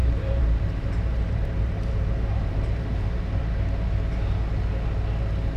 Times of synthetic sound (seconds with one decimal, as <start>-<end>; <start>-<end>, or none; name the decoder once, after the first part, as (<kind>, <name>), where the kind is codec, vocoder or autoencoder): 0.0-3.4 (vocoder, BigVGAN v2)